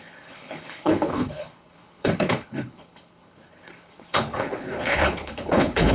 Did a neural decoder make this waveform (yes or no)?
yes